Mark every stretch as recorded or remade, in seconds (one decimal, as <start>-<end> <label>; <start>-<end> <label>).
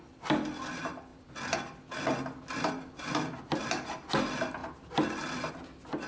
0.0-6.1 recorded